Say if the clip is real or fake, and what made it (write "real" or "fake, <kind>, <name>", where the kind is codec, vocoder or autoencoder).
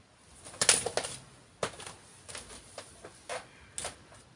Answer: real